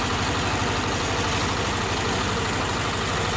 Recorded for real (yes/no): yes